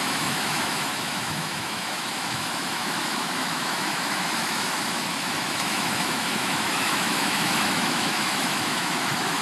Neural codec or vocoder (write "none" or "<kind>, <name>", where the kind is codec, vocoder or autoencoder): autoencoder, DAC-VAE